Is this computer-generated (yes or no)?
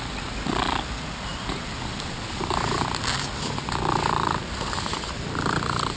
no